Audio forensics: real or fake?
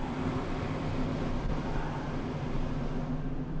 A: real